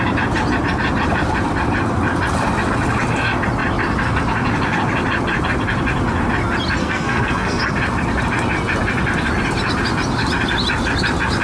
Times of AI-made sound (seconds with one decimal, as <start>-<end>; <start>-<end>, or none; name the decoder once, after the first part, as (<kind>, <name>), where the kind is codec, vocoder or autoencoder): 6.8-7.6 (codec, SNAC)